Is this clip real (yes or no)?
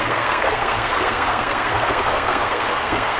no